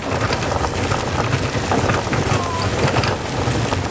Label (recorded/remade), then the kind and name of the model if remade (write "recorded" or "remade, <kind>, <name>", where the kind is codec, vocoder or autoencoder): recorded